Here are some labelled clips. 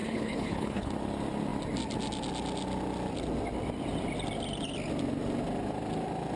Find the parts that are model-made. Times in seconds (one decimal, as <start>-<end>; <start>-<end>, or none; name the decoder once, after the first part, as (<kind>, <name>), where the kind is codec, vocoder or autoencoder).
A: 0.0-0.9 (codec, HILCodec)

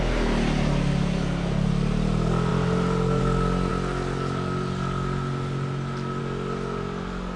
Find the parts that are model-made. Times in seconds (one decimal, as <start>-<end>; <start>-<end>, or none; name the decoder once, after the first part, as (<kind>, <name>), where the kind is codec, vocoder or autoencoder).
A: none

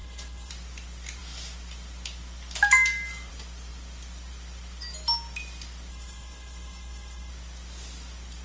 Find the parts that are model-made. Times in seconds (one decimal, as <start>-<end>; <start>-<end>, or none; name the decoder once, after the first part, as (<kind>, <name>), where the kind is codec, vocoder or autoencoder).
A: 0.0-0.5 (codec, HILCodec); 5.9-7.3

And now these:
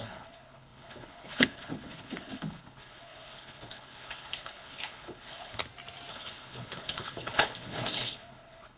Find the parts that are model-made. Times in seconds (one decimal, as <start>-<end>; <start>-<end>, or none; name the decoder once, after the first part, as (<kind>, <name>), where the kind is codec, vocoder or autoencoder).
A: 0.0-5.6 (codec, HILCodec); 6.1-8.8

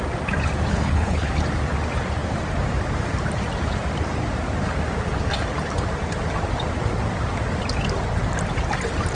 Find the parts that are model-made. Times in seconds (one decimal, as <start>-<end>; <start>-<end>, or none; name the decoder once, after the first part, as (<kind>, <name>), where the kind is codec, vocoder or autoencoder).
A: 0.7-1.3 (codec, HILCodec)

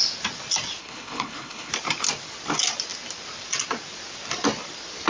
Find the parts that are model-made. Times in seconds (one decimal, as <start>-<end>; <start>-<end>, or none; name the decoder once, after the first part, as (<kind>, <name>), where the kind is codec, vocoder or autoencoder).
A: 0.8-1.7 (codec, HILCodec)

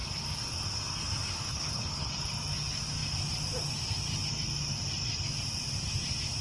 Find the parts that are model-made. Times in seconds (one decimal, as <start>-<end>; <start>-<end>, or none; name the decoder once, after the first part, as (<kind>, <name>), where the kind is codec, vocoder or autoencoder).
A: 1.5-2.1 (codec, HILCodec)